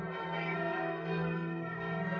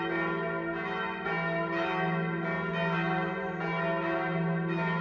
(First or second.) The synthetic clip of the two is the first